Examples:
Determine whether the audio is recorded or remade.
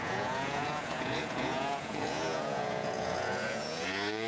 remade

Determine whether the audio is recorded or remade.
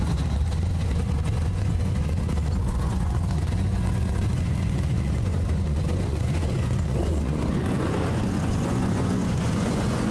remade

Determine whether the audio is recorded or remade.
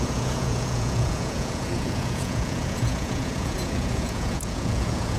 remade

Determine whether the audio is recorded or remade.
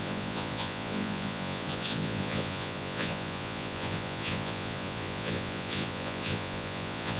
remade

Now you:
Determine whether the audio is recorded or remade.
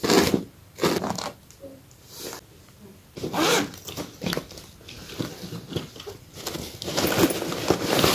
recorded